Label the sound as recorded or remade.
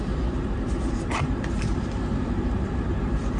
remade